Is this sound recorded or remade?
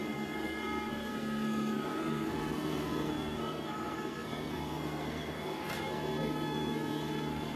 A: remade